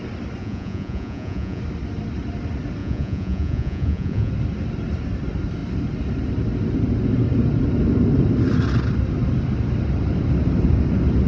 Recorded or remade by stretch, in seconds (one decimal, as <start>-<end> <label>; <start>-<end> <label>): 0.0-0.4 recorded; 0.4-1.6 remade; 1.6-2.8 recorded; 2.8-4.3 remade; 4.3-11.3 recorded